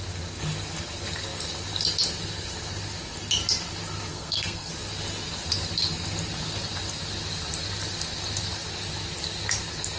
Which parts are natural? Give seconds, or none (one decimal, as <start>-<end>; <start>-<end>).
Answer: 0.0-4.1; 4.7-10.0